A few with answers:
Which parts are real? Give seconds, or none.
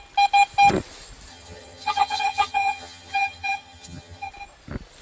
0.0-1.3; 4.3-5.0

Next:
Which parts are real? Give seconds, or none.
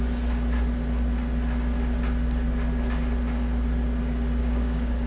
0.0-4.4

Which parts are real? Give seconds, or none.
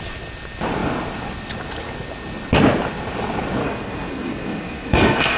0.0-3.6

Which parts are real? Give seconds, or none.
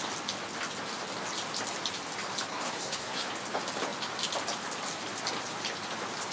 0.0-2.5; 3.3-6.3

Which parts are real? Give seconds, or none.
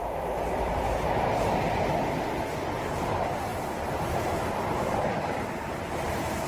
1.5-3.5; 5.8-6.5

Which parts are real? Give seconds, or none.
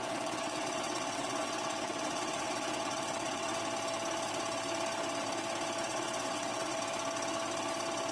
3.6-5.9; 6.8-8.1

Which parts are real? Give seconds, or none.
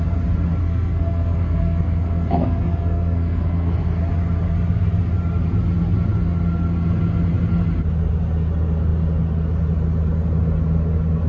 0.0-0.6; 4.0-11.3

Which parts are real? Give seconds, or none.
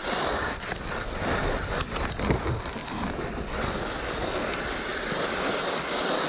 2.0-2.8; 4.0-6.3